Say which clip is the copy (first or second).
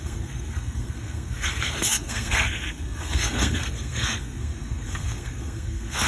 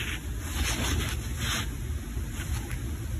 first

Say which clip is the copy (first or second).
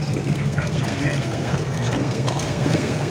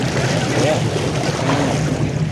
first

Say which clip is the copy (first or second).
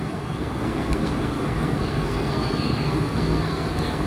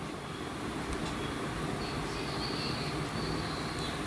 first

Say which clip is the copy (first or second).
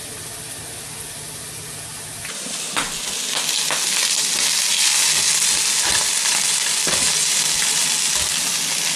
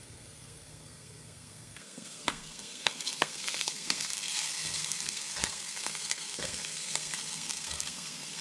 second